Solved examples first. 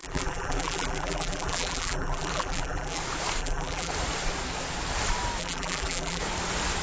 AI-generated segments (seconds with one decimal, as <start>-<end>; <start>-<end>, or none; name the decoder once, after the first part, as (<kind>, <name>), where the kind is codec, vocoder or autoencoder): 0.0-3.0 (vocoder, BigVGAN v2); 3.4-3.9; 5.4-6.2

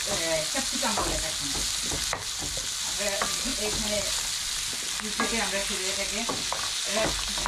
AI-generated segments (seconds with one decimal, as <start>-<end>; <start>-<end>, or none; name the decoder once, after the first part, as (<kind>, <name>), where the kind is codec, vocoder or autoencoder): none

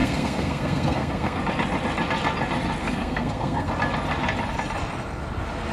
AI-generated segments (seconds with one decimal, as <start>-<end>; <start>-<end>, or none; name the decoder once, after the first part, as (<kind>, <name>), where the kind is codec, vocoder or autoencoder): 0.0-1.4 (codec, SNAC); 2.8-3.7

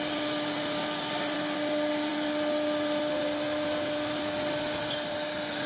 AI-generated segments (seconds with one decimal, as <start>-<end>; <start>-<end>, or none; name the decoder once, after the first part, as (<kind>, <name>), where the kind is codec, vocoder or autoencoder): none

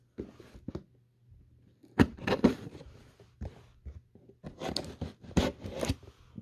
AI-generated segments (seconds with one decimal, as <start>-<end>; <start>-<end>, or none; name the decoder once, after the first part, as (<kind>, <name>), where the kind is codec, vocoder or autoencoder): 1.8-3.5 (vocoder, BigVGAN v2)